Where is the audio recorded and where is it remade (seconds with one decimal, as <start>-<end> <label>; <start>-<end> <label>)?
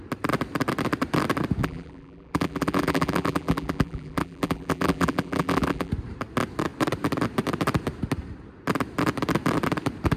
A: 0.0-1.6 recorded; 1.6-5.9 remade; 5.9-10.2 recorded